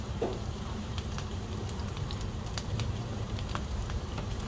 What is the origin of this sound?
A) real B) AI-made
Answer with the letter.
B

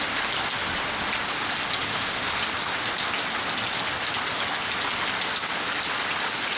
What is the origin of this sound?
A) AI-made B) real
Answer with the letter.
B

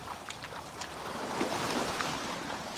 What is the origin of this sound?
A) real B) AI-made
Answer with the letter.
B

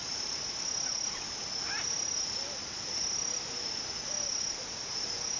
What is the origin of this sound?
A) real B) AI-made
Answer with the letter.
A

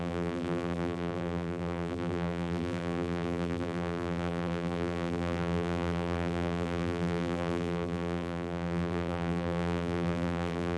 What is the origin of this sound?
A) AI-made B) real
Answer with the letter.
A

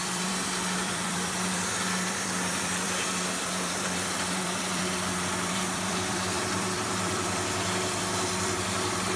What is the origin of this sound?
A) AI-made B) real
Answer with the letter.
A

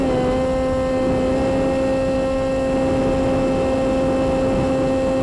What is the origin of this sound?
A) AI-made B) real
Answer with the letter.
B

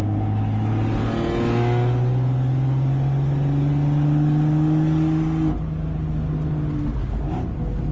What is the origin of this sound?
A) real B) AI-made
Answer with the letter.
A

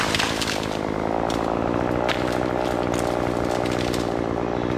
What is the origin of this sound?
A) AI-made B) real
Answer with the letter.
B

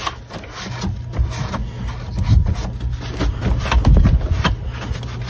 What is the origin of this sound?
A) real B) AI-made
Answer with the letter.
A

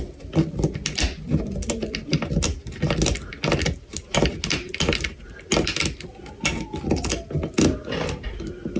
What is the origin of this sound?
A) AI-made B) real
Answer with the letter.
B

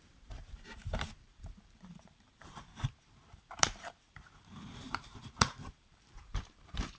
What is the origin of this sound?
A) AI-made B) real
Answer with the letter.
A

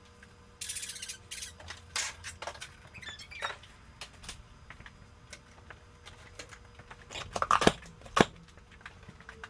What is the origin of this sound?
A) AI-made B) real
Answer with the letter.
B